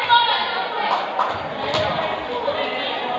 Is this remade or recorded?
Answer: recorded